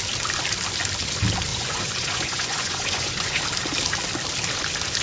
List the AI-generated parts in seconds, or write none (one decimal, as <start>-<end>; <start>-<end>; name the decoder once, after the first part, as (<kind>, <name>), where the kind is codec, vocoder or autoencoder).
1.5-3.4 (vocoder, Vocos)